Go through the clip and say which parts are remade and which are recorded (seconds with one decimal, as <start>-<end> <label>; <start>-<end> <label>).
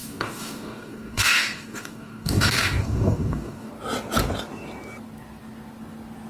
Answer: 0.0-3.7 remade; 3.7-6.3 recorded